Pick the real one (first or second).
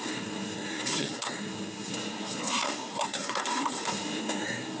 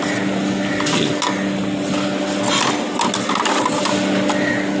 second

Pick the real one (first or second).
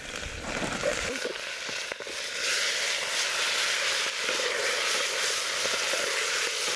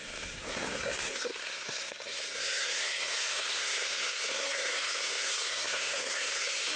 first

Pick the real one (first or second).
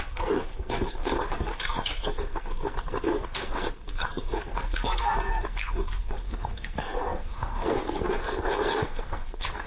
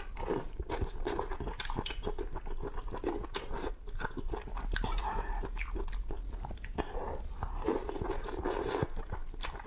second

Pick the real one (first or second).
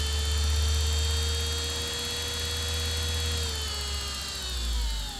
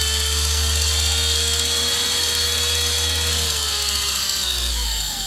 first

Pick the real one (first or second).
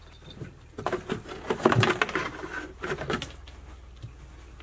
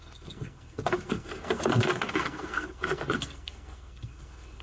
first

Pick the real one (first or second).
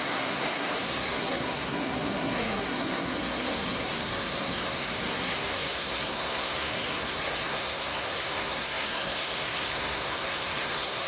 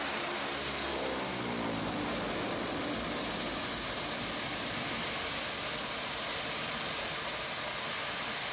second